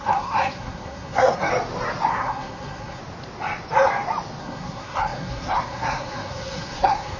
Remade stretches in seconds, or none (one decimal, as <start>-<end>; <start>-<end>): 0.0-1.5; 2.1-3.0; 4.4-7.2